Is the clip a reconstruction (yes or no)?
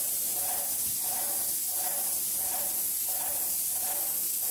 no